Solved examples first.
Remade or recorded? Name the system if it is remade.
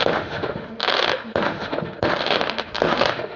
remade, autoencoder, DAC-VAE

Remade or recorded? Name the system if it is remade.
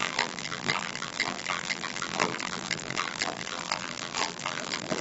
remade, vocoder, BigVGAN v2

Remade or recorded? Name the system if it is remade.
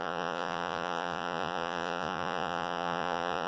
remade, vocoder, Vocos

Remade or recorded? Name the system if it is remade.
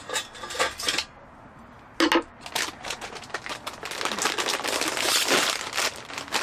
recorded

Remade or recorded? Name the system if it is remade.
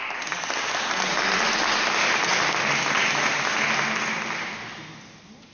recorded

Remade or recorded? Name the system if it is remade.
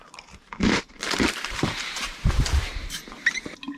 remade, vocoder, BigVGAN v2